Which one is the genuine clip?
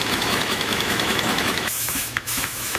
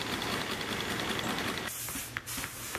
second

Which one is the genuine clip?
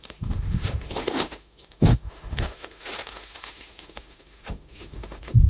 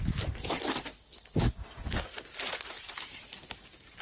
second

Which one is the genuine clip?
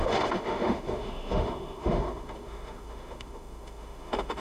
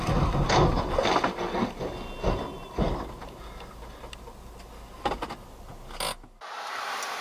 second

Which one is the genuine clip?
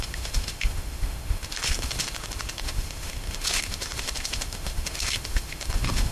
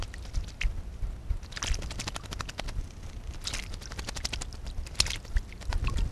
second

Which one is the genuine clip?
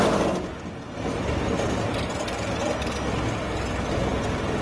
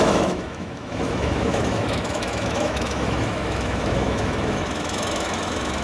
first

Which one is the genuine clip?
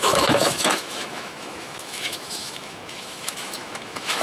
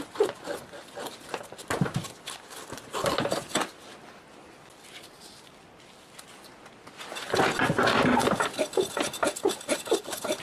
second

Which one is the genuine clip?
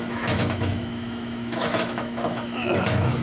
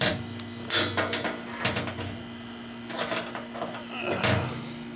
second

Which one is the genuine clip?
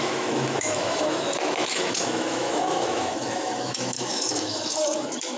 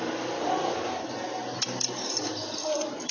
second